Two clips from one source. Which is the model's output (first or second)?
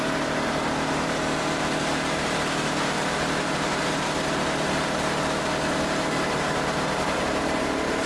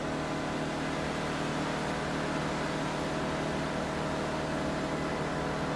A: first